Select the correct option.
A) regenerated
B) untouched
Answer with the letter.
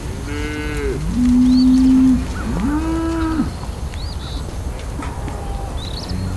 B